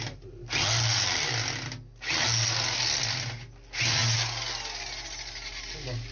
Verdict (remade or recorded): recorded